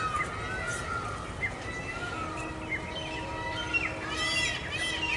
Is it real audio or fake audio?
real